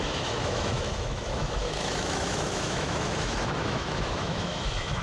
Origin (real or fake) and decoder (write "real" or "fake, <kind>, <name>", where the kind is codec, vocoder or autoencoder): fake, autoencoder, DAC-VAE